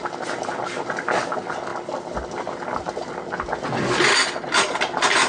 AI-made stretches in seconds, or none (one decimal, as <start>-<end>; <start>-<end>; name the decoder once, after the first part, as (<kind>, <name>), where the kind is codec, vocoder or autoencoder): none